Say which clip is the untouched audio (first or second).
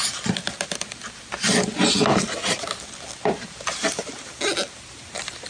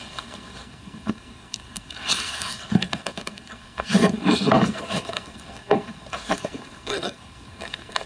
first